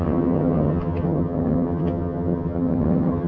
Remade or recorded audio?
remade